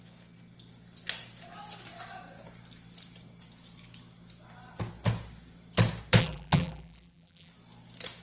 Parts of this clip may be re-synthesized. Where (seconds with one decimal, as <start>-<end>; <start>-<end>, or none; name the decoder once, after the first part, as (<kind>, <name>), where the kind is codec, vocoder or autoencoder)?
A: 6.2-7.5 (vocoder, BigVGAN v2)